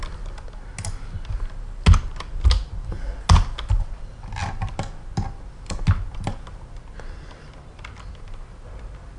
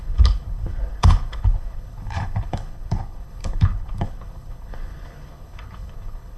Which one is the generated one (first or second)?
second